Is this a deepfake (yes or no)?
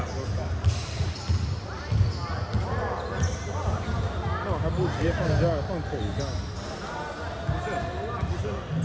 no